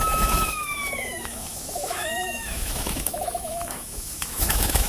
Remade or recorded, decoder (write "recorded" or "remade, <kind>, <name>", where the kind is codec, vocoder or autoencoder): remade, autoencoder, DAC-VAE